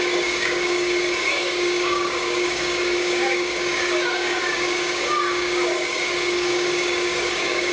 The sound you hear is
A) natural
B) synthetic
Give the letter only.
B